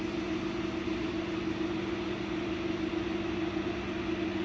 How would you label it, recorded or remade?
recorded